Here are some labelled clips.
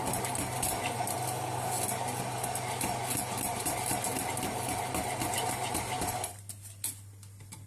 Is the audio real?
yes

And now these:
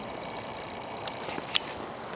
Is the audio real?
yes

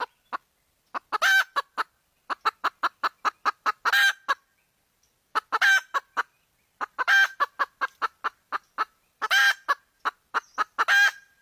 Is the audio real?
yes